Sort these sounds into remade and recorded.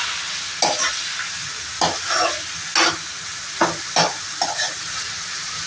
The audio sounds recorded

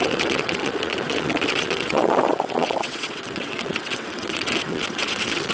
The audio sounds remade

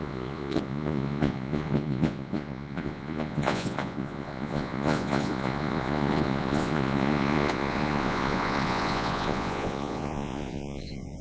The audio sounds remade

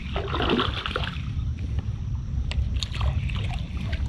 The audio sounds recorded